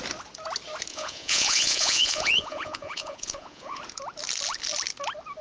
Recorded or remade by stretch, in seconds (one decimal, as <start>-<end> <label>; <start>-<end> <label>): 0.0-0.9 recorded; 0.9-3.8 remade; 3.8-5.4 recorded